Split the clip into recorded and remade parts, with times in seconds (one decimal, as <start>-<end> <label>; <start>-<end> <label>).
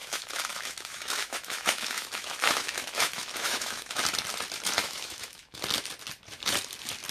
0.0-4.0 remade; 4.0-4.8 recorded; 4.8-5.6 remade; 5.6-7.1 recorded